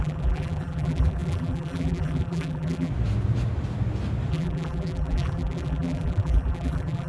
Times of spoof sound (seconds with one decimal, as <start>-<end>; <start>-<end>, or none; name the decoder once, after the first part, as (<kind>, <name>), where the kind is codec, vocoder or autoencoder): 0.0-2.9 (vocoder, BigVGAN v2); 4.3-7.1